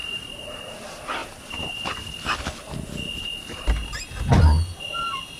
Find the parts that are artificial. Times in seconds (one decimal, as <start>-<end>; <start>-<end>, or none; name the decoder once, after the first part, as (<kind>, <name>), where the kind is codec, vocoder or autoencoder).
0.0-0.7 (vocoder, BigVGAN v2)